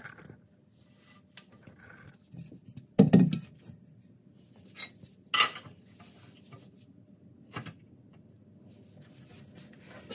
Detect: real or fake real